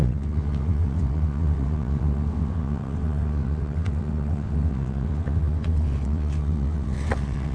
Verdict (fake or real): fake